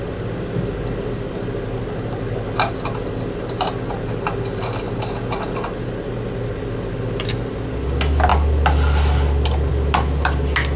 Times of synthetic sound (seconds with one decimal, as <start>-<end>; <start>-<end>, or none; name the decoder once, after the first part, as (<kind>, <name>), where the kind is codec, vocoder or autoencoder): none